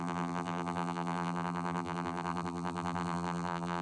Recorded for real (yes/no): no